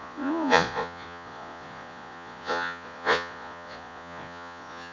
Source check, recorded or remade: remade